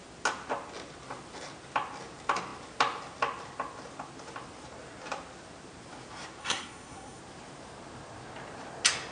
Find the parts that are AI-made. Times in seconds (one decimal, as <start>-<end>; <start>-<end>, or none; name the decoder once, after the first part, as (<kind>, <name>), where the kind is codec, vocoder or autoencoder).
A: 6.4-7.2 (codec, SNAC)